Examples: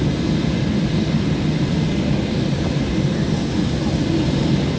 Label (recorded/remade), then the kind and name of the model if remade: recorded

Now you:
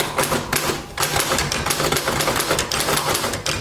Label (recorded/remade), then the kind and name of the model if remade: recorded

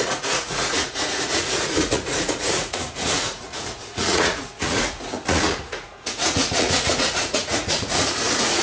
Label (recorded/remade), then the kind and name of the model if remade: remade, vocoder, Vocos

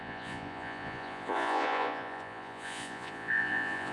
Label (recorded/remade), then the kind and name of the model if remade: remade, vocoder, Vocos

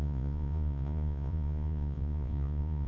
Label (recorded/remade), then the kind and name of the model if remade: remade, vocoder, Vocos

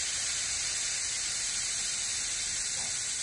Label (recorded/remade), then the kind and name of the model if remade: recorded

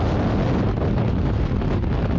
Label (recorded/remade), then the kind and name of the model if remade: recorded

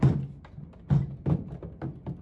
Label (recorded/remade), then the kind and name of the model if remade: recorded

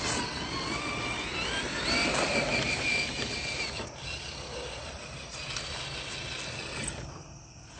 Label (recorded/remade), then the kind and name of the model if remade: recorded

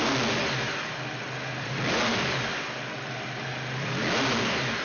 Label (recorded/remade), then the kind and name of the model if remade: recorded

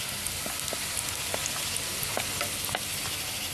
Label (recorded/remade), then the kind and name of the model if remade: recorded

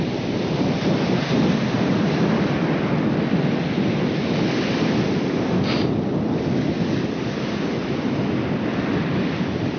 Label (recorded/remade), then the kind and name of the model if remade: recorded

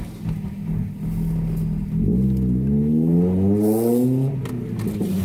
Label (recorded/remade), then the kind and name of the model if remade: recorded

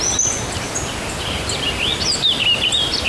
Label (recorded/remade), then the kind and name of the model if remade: recorded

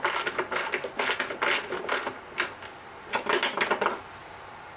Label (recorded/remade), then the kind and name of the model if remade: recorded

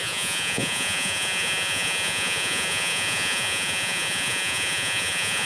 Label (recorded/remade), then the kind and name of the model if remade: remade, vocoder, Vocos